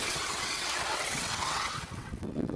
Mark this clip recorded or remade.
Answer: remade